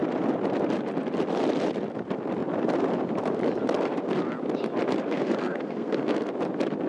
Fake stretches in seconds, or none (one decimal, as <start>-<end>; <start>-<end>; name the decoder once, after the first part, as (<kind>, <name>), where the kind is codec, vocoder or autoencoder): 5.0-6.3 (codec, SNAC)